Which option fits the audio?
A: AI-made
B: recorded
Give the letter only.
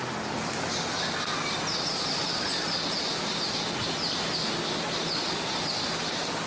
B